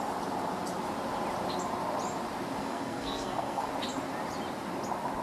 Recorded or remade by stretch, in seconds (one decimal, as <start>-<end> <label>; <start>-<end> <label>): 0.0-2.6 recorded; 2.6-3.7 remade; 3.7-5.2 recorded